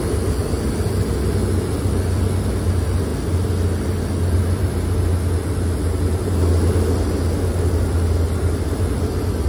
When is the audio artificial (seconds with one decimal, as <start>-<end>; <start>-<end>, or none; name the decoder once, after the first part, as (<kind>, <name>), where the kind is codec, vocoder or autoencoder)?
none